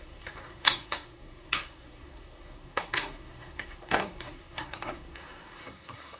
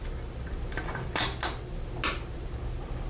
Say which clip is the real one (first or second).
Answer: second